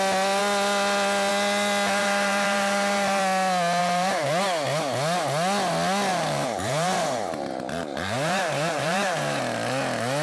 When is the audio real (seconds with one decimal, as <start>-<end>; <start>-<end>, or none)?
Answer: 0.0-2.0; 3.2-3.8; 4.4-6.1; 9.4-10.2